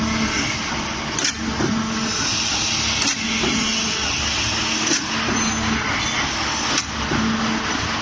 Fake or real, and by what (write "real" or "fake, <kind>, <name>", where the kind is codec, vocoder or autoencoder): real